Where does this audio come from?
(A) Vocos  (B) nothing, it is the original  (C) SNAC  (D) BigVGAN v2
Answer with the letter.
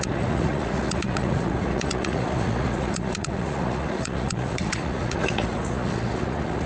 A